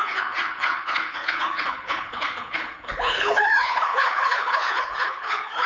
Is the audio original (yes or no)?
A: no